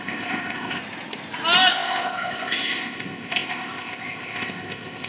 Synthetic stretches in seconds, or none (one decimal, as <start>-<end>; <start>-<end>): 0.0-0.8; 1.7-5.1